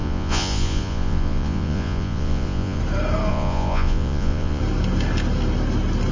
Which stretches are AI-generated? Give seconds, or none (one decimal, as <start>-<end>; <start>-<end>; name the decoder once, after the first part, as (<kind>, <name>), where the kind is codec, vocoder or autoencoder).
0.0-2.8 (vocoder, Vocos); 3.3-4.6